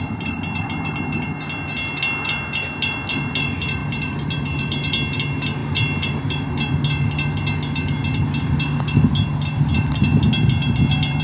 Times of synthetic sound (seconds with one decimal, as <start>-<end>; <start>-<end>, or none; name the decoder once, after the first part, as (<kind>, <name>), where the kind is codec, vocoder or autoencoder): 3.8-4.8 (vocoder, BigVGAN v2); 10.1-11.2